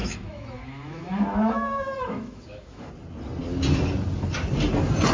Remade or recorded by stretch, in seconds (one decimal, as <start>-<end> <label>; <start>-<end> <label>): 0.0-2.9 remade; 2.9-5.1 recorded